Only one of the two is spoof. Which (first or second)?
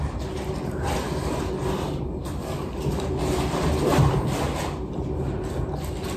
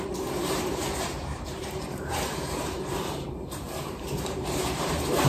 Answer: second